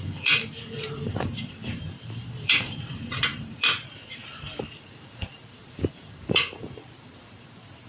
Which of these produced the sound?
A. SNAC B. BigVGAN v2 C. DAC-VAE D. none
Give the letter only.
B